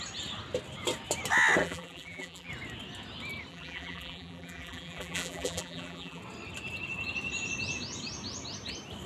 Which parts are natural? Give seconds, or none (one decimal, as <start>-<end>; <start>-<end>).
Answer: 0.0-1.6; 2.5-3.5; 6.2-9.1